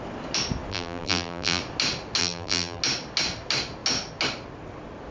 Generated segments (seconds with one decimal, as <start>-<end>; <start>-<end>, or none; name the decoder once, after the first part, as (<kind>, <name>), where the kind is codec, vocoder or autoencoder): 0.7-1.6 (vocoder, BigVGAN v2); 2.2-2.8